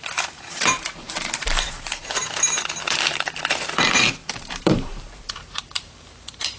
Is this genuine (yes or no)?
no